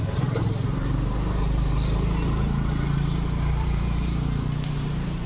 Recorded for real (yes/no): no